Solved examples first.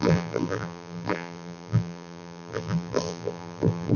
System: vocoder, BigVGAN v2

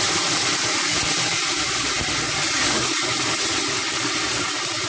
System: none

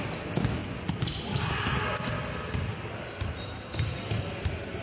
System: none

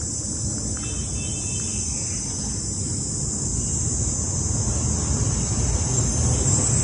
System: none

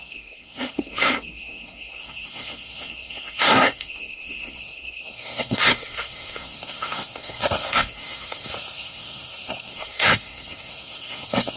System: codec, SNAC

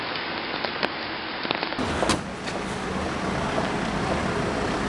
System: none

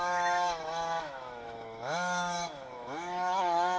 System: autoencoder, DAC-VAE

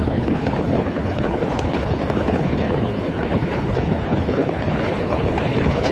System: codec, HILCodec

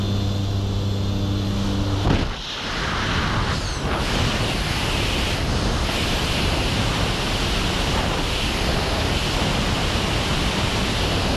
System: none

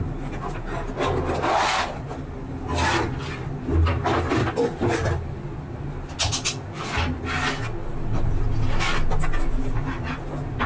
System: none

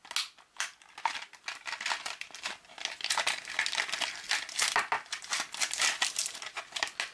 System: none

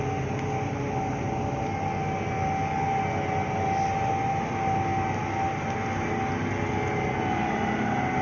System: none